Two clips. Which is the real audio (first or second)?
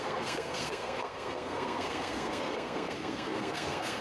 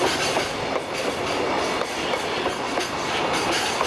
second